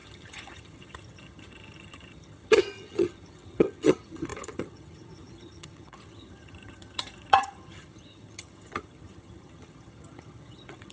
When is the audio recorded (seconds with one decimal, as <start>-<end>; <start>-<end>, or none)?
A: none